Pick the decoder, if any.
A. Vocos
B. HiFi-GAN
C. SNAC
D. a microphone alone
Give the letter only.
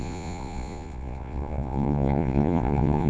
A